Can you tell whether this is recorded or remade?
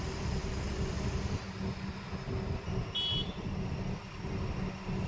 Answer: recorded